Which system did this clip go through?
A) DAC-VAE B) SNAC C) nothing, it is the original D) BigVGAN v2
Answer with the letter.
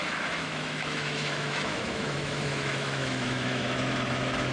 A